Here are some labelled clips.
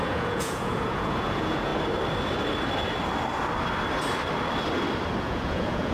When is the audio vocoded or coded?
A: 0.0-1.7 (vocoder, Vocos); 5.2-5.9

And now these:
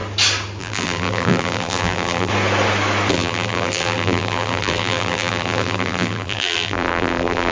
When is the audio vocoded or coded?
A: 0.6-2.3 (vocoder, BigVGAN v2); 3.1-7.5

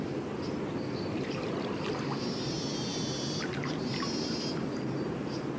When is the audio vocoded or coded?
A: none

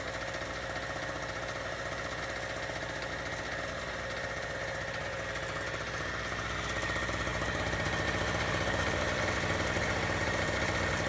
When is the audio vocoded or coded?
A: 7.3-10.6 (vocoder, BigVGAN v2)

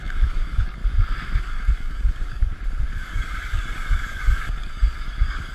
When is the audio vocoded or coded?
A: 0.0-0.8 (codec, DAC); 1.4-2.4; 2.9-5.5